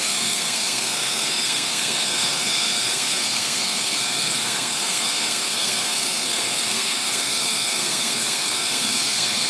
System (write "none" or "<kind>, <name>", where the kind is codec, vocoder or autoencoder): codec, SNAC